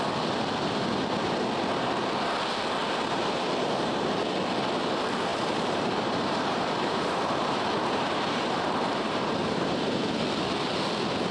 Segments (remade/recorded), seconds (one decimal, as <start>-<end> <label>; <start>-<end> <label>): 0.0-2.8 recorded; 2.8-4.2 remade; 4.2-5.3 recorded; 5.3-10.1 remade; 10.1-11.3 recorded